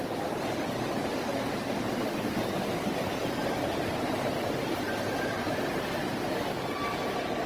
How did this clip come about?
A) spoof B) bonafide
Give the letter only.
B